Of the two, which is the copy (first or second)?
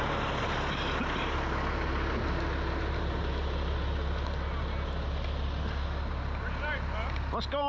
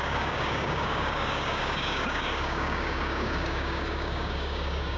second